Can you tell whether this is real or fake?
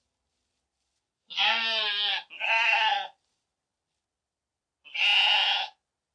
real